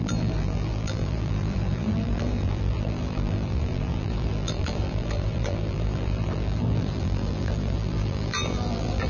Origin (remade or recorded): remade